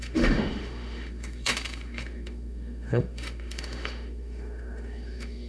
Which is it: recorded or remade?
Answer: remade